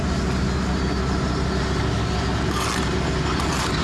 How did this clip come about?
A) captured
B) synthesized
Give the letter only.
A